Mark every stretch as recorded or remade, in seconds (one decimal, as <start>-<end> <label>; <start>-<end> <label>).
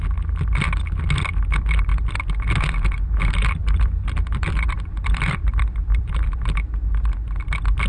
0.0-3.6 recorded; 3.6-6.4 remade; 6.4-7.9 recorded